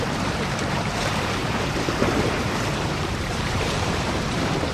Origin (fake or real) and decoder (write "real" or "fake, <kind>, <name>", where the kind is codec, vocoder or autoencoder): fake, vocoder, BigVGAN v2